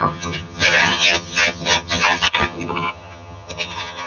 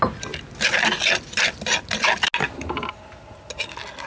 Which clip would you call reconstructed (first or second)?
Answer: first